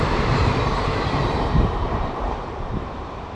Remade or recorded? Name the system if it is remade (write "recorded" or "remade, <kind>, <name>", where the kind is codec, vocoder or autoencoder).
remade, vocoder, BigVGAN v2